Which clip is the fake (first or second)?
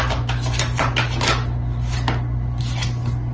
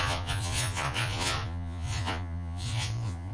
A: second